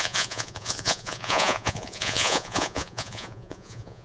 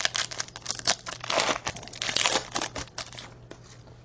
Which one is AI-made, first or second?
first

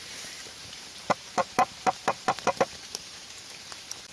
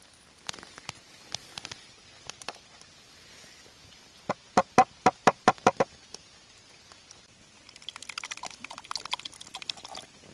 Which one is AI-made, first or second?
first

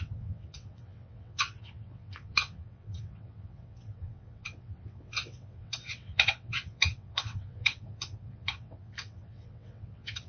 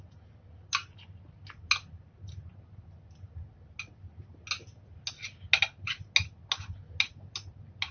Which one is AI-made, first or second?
first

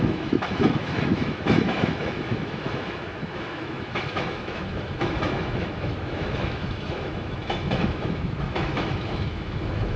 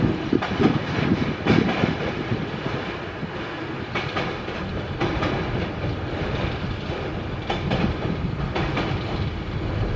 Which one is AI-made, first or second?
first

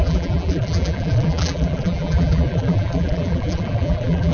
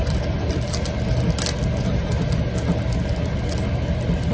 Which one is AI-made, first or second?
first